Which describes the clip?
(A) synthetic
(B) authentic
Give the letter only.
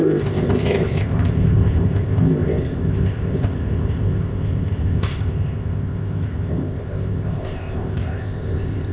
A